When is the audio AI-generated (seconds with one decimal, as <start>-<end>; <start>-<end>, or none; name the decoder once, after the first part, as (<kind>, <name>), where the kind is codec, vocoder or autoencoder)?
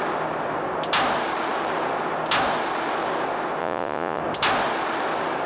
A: 3.6-4.2 (vocoder, Vocos)